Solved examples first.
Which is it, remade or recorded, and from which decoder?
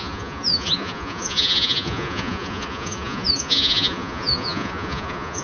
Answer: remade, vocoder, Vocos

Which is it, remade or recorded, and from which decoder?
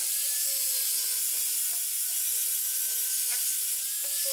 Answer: recorded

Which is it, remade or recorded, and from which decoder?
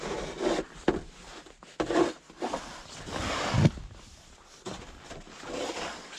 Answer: recorded